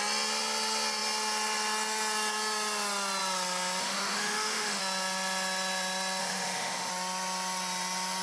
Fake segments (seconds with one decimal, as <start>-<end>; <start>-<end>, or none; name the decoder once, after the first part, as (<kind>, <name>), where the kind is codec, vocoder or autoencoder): 3.8-4.8 (autoencoder, DAC-VAE); 6.2-6.9